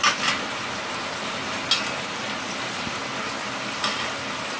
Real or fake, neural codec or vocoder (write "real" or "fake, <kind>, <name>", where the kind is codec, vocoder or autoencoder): real